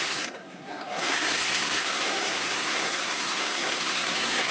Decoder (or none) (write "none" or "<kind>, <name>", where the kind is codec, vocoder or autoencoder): codec, SNAC